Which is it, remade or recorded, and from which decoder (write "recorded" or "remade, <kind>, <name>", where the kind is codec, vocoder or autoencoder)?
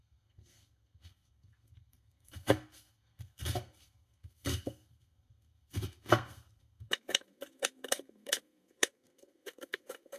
remade, codec, SNAC